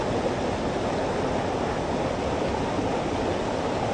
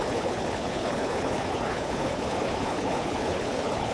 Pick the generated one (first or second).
second